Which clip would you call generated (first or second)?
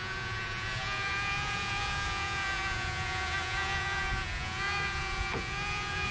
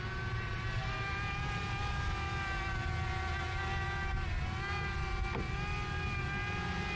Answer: first